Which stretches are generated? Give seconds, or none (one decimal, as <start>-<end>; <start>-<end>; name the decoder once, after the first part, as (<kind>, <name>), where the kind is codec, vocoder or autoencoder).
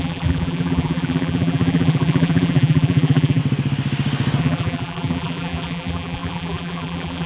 0.0-3.4 (vocoder, BigVGAN v2); 4.4-7.3